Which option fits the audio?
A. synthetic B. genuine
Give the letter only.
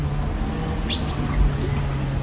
B